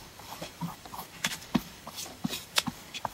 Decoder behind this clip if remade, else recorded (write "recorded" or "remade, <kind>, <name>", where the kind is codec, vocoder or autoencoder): remade, codec, DAC